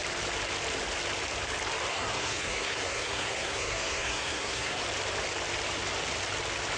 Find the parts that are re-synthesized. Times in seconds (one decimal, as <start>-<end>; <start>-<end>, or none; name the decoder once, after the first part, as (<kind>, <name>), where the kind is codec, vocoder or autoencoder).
1.9-4.8 (codec, SNAC)